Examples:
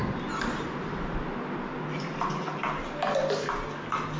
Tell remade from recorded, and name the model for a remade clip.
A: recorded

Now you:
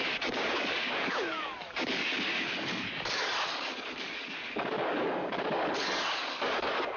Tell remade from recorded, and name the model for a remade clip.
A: remade, codec, DAC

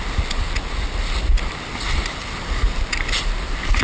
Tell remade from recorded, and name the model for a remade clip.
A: recorded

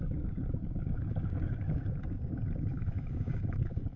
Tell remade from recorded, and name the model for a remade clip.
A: remade, codec, DAC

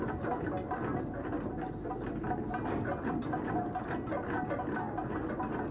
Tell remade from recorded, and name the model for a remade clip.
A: recorded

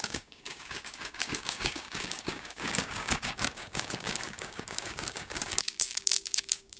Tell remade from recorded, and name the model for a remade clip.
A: remade, codec, DAC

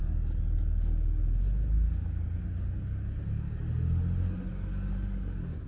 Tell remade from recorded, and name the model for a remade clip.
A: recorded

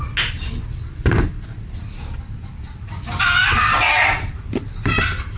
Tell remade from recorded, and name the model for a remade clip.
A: recorded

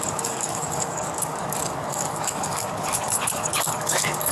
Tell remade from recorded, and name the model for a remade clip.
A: remade, codec, DAC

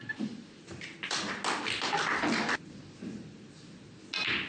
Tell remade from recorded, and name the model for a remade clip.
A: recorded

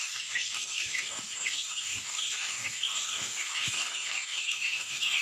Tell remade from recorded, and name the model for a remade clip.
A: remade, codec, DAC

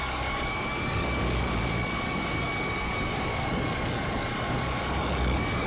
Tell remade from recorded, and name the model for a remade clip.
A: remade, codec, DAC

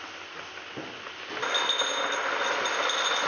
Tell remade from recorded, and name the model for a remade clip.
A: recorded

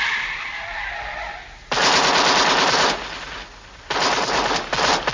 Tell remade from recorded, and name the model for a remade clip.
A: recorded